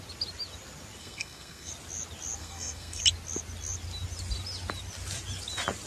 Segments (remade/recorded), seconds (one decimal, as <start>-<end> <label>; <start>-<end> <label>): 0.0-1.0 recorded; 1.0-1.7 remade; 1.7-2.4 recorded; 2.4-3.0 remade; 3.0-5.9 recorded